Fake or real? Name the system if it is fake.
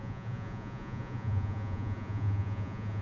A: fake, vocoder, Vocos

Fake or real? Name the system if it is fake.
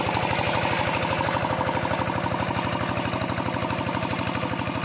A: real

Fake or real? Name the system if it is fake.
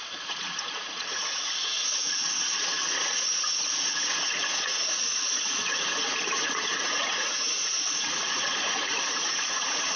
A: fake, vocoder, Vocos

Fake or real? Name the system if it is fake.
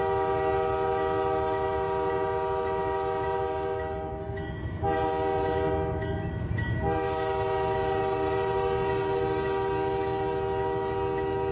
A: real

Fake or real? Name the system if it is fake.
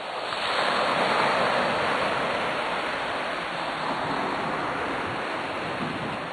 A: real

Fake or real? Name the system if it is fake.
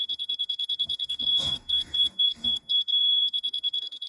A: fake, codec, DAC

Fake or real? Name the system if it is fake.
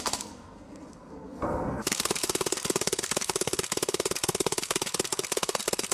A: fake, codec, SNAC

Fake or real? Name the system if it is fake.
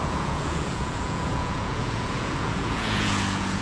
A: fake, vocoder, Vocos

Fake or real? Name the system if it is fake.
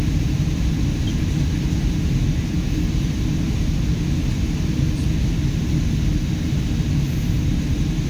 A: real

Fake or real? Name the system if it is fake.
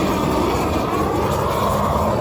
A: real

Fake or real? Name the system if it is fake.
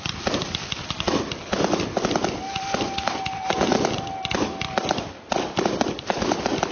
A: fake, vocoder, BigVGAN v2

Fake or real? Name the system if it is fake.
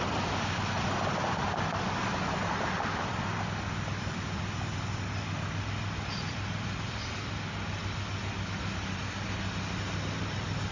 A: real